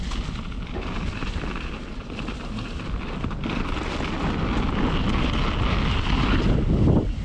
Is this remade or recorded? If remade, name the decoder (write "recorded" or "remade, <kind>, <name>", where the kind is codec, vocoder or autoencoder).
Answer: recorded